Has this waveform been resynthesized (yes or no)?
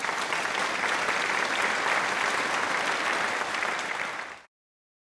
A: yes